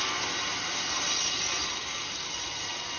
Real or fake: real